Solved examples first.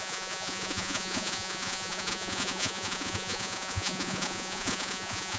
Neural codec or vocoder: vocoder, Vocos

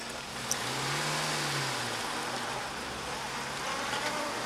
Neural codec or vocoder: none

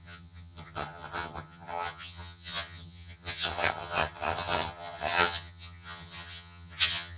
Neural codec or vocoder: vocoder, HiFi-GAN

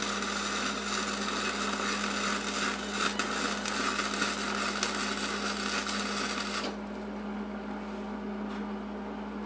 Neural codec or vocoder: none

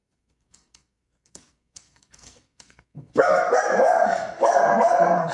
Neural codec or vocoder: codec, SNAC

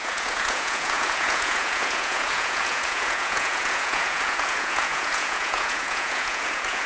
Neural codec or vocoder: vocoder, Vocos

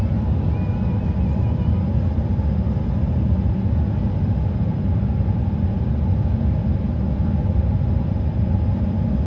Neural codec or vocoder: none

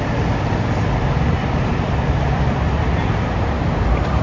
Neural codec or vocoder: none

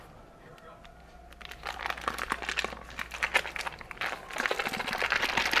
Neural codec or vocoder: none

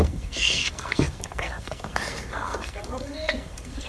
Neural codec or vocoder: codec, SNAC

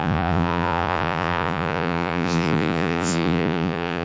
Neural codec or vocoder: vocoder, Vocos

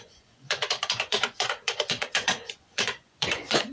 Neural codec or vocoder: vocoder, Vocos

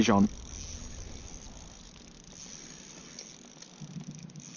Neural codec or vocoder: none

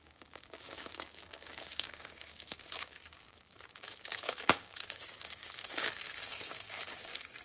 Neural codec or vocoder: codec, DAC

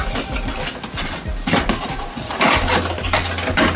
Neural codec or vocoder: none